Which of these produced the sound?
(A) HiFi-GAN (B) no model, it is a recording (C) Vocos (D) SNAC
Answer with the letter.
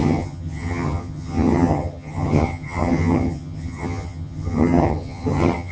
A